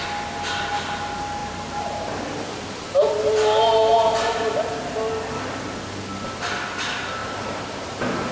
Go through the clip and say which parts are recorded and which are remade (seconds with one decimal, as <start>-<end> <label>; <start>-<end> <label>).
0.0-1.4 recorded; 1.4-3.2 remade; 3.2-3.9 recorded; 3.9-4.6 remade; 4.6-7.2 recorded; 7.2-8.3 remade